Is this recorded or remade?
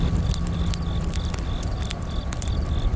recorded